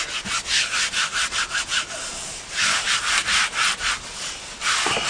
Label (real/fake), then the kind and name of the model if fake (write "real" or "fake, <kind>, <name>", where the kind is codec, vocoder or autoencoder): real